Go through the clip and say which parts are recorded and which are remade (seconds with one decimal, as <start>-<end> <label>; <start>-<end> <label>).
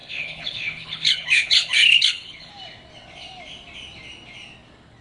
0.0-2.5 remade; 2.5-5.0 recorded